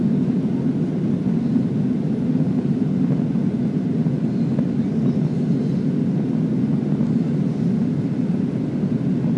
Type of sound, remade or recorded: recorded